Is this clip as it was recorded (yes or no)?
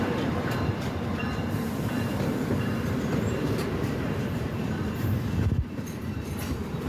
no